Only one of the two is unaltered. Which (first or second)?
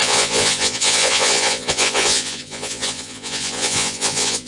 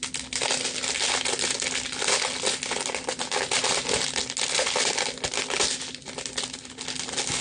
second